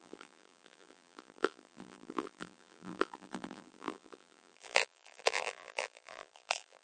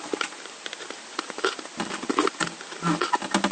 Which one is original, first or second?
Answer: second